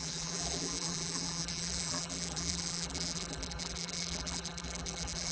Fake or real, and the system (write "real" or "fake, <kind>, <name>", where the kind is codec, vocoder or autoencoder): fake, vocoder, BigVGAN v2